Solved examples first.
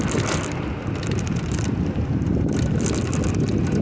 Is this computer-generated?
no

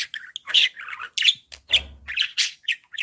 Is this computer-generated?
no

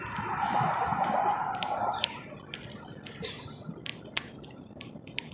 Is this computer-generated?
no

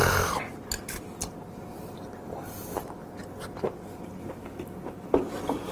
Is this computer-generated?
no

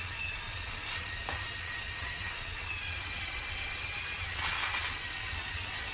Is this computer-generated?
yes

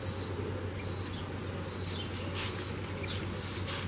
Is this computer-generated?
no